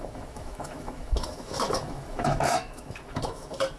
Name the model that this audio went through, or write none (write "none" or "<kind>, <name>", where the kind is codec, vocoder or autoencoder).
autoencoder, DAC-VAE